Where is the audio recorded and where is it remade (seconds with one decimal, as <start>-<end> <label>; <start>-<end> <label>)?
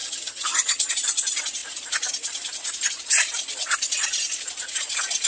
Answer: 0.0-0.9 remade; 0.9-5.3 recorded